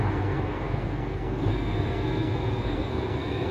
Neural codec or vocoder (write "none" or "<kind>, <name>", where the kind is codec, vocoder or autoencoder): codec, SNAC